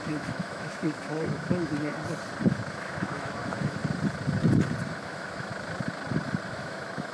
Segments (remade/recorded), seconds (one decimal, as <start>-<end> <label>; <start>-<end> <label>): 0.0-1.9 remade; 1.9-2.5 recorded; 2.5-3.8 remade; 3.8-4.9 recorded; 4.9-5.5 remade; 5.5-6.5 recorded; 6.5-7.1 remade